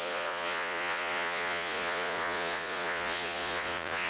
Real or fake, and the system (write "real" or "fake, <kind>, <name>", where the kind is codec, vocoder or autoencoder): fake, vocoder, Vocos